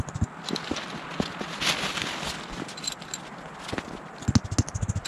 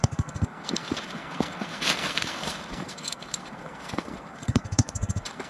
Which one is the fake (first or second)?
second